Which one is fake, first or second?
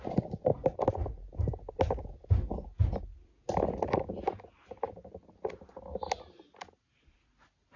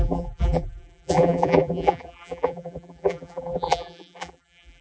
second